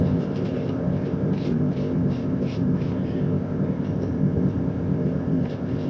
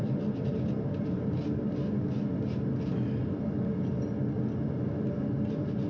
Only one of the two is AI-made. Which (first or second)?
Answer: first